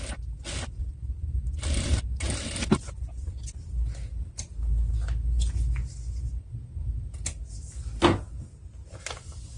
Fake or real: real